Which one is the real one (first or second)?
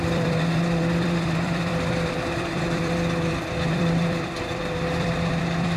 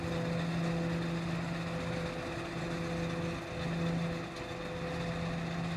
second